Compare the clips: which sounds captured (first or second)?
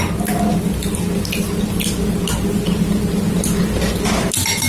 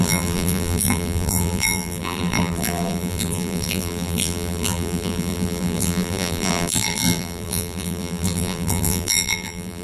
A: first